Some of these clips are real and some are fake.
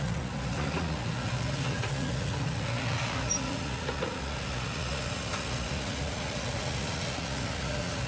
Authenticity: fake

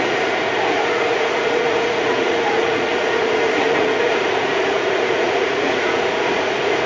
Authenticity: fake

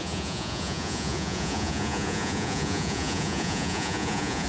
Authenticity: fake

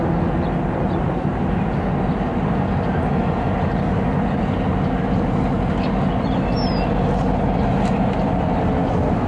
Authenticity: real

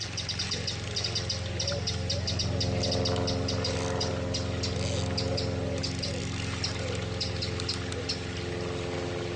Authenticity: real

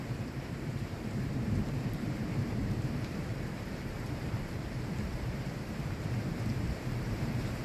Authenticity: fake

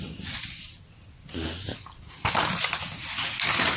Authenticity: real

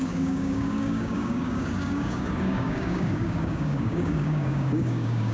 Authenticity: fake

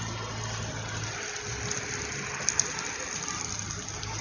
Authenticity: real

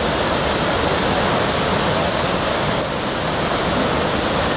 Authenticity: real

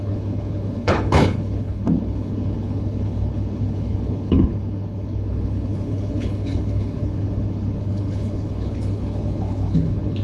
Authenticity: fake